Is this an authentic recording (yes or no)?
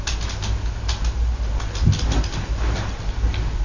yes